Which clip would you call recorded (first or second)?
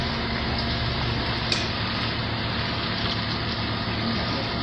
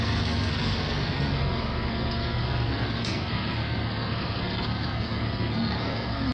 first